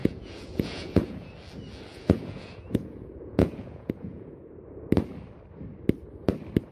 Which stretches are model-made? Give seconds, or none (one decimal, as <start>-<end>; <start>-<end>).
0.0-1.3; 1.9-4.5

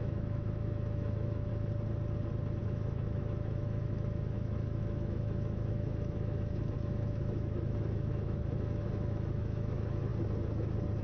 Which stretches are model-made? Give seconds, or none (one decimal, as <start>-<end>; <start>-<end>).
0.0-1.5; 2.6-10.1

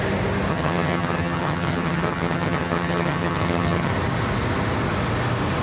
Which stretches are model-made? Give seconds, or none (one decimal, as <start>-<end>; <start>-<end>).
0.5-3.9

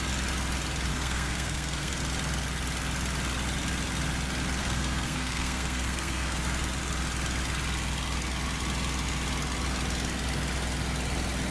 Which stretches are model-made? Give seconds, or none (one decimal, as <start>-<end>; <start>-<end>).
0.9-2.0; 4.6-6.4

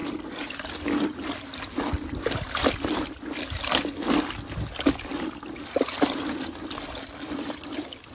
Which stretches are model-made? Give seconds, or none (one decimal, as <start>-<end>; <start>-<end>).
0.0-1.4